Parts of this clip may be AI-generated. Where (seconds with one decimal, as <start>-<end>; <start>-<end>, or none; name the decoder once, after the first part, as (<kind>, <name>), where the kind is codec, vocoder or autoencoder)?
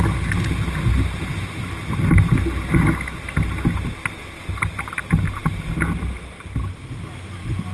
none